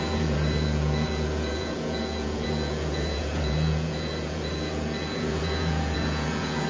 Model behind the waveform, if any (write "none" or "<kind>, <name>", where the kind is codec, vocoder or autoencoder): vocoder, Vocos